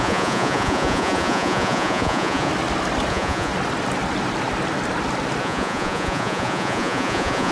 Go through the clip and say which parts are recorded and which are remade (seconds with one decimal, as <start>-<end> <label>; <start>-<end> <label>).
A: 0.0-2.5 remade; 2.5-3.1 recorded; 3.1-3.5 remade; 3.5-5.4 recorded; 5.4-7.5 remade